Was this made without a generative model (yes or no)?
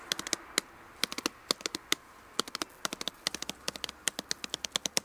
yes